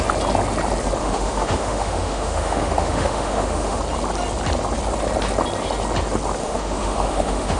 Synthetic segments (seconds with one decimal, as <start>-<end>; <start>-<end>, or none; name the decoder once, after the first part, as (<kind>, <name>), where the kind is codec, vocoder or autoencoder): 1.0-3.8 (autoencoder, DAC-VAE); 6.4-7.6